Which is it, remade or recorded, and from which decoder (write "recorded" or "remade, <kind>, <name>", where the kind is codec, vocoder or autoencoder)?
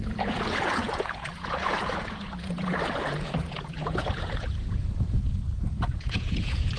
remade, vocoder, Vocos